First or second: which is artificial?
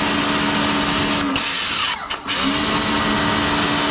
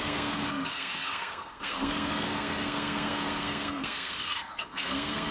second